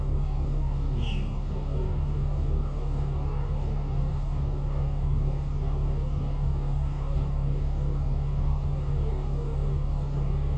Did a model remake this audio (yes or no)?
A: yes